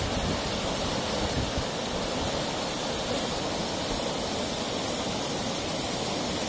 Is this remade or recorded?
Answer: recorded